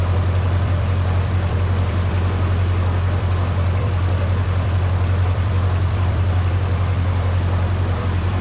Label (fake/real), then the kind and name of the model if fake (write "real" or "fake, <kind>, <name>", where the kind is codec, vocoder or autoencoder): fake, vocoder, BigVGAN v2